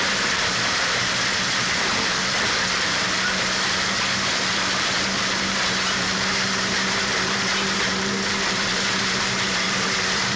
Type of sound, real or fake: fake